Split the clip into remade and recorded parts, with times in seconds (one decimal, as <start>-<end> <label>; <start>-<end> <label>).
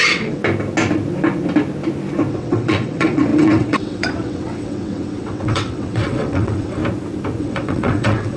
0.0-0.4 remade; 0.4-2.3 recorded; 2.3-6.8 remade; 6.8-7.4 recorded; 7.4-8.4 remade